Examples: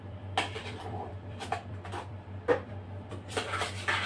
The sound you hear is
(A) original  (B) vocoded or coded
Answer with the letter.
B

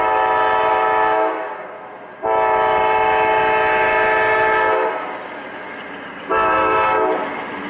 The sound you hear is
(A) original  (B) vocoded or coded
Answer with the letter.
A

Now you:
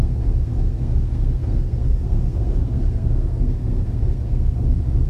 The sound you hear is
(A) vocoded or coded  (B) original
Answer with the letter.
A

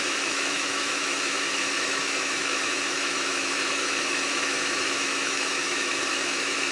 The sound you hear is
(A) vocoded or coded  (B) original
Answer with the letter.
A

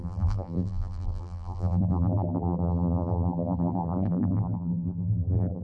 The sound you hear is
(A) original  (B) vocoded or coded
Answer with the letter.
B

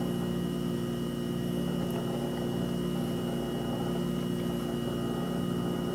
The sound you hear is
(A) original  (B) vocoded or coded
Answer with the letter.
A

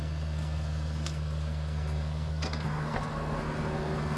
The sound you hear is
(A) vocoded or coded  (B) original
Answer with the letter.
A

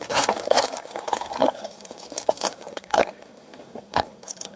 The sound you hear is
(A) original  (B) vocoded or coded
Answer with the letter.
B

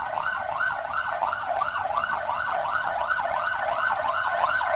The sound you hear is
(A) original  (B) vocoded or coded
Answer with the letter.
B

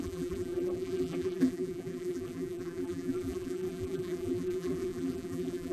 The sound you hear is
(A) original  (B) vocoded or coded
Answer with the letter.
B